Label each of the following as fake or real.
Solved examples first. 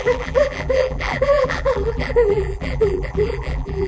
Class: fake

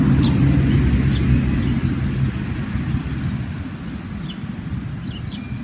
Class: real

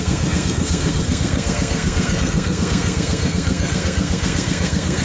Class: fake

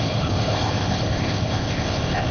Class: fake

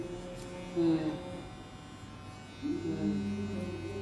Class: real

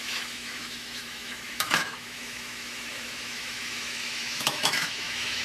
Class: fake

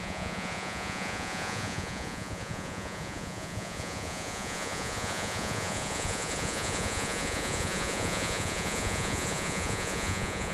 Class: fake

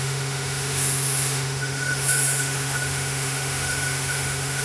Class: fake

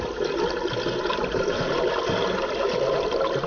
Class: real